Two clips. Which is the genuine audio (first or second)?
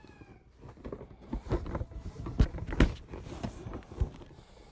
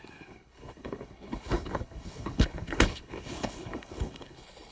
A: first